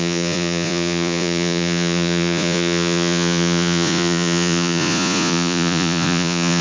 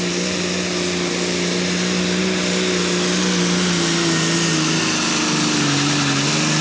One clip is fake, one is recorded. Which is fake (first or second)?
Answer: first